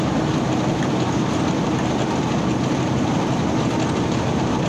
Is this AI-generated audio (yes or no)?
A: no